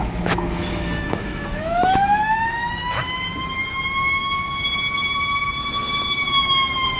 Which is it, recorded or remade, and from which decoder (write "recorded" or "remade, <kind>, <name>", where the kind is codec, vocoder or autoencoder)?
remade, autoencoder, DAC-VAE